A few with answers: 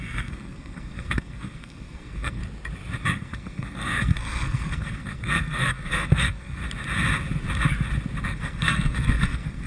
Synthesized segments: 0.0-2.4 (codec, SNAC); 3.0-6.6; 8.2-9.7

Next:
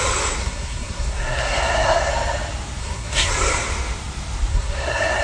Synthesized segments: 0.4-2.1 (codec, SNAC); 2.8-3.3; 4.5-5.2